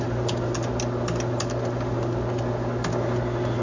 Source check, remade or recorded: recorded